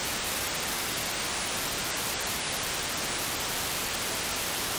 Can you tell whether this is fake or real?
real